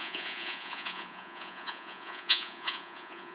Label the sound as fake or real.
fake